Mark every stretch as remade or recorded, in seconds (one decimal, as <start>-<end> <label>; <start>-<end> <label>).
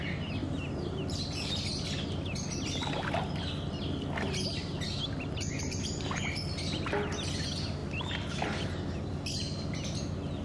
0.0-10.4 recorded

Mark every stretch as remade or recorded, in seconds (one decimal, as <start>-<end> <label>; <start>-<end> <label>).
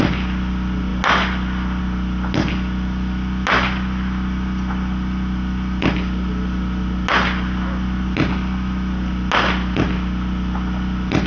0.0-11.3 recorded